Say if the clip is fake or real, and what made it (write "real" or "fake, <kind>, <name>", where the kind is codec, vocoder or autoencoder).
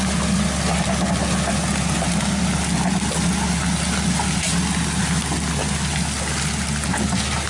real